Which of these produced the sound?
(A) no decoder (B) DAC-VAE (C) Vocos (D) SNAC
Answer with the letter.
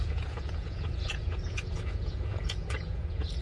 C